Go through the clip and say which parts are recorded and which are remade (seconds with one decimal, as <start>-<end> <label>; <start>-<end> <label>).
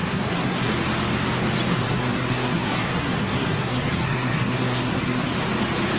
0.0-0.7 remade; 0.7-1.7 recorded; 1.7-5.3 remade; 5.3-6.0 recorded